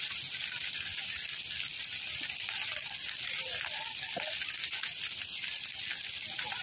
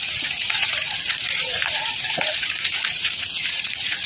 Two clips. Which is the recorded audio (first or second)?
first